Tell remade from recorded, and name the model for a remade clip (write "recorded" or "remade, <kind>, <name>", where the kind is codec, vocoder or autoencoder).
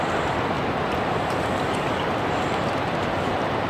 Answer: recorded